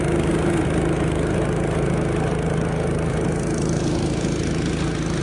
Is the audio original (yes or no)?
yes